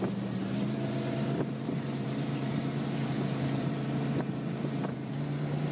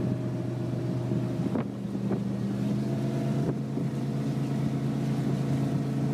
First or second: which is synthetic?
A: first